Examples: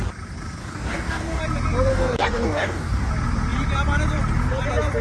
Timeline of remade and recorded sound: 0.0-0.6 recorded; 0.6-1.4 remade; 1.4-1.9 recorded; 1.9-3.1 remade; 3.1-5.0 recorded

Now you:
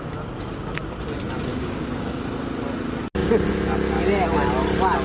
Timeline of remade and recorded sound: 0.0-1.5 recorded; 1.5-2.2 remade; 2.2-5.0 recorded

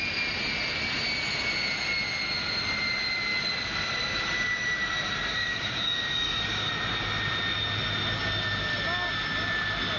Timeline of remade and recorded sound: 0.0-5.3 recorded; 5.3-6.7 remade; 6.7-10.0 recorded

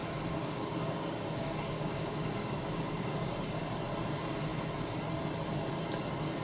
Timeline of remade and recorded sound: 0.0-3.8 remade; 3.8-6.4 recorded